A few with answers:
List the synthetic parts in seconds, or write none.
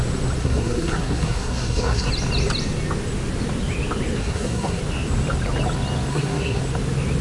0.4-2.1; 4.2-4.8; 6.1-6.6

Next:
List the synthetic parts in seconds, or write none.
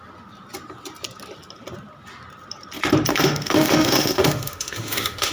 3.1-5.3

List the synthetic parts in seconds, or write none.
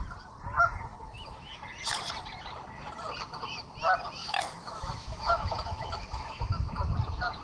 0.9-1.6; 4.2-6.7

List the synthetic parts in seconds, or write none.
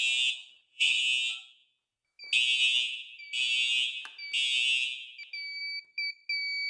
0.4-1.0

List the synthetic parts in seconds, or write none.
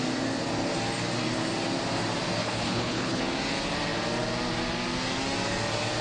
2.4-3.2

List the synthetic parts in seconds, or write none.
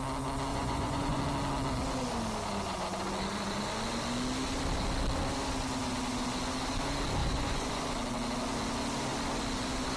0.5-1.2; 7.2-7.8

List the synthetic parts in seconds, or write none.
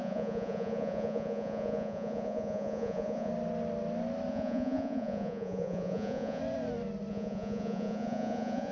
0.0-3.3; 4.3-6.4; 7.1-8.7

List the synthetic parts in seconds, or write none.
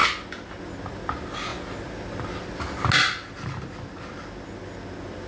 none